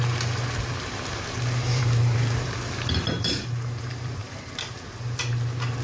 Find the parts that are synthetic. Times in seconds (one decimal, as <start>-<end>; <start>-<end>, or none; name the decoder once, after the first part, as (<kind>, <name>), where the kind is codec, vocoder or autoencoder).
1.7-5.2 (vocoder, BigVGAN v2)